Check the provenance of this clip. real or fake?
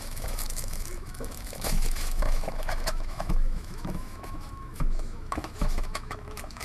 fake